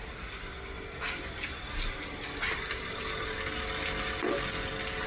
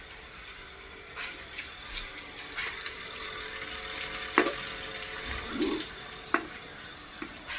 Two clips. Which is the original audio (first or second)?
first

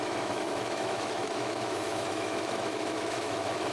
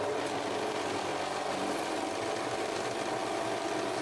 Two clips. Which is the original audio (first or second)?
second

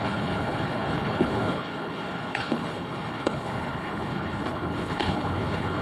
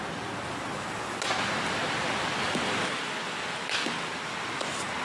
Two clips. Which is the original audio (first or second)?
second